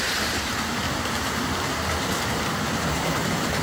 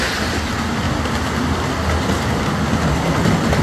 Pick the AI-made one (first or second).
first